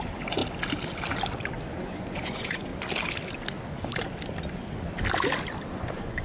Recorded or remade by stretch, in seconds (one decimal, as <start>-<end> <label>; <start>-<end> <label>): 0.0-0.4 remade; 0.4-1.8 recorded; 1.8-2.7 remade; 2.7-5.7 recorded; 5.7-6.2 remade